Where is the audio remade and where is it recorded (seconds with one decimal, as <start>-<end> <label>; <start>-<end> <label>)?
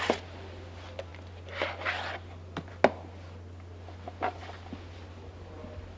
0.0-6.0 recorded